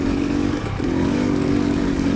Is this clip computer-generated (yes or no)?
yes